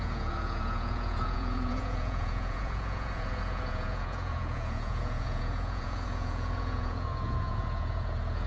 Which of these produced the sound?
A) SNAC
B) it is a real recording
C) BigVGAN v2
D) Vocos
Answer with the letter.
D